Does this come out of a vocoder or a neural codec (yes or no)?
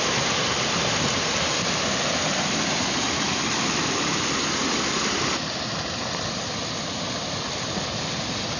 no